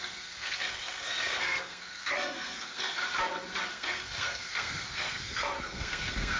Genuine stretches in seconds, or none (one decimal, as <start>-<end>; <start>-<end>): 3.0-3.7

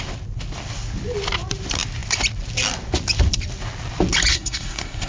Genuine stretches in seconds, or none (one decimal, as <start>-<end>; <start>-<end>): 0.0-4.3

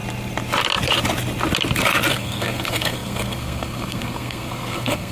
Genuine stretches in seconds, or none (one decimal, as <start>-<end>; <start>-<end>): 0.0-2.1

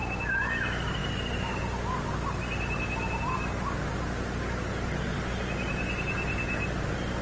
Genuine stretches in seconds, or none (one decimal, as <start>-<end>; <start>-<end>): 0.0-7.2

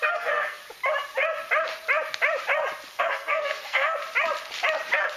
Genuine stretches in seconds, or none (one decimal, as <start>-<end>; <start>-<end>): 0.6-3.0; 4.0-5.2

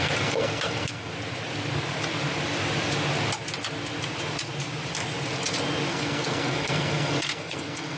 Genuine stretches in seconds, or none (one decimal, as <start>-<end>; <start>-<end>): 1.1-5.9